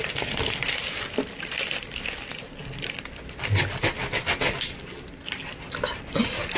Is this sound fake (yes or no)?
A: no